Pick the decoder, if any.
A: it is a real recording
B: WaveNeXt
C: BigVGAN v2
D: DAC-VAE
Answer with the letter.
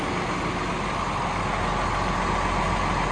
A